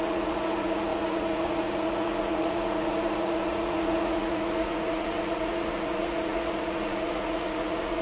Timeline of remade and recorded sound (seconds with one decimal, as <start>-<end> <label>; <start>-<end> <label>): 0.0-8.0 remade